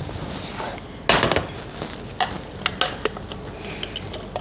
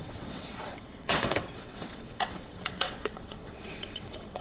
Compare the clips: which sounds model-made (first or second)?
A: second